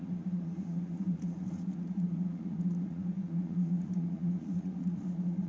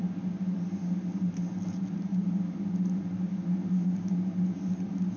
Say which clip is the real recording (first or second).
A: second